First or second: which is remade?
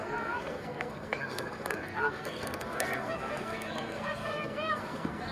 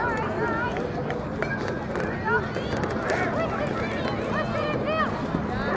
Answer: first